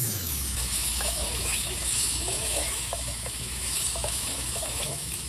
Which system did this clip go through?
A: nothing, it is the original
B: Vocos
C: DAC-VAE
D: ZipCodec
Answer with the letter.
C